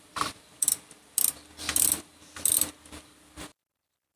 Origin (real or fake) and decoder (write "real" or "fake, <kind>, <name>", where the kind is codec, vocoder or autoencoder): fake, vocoder, BigVGAN v2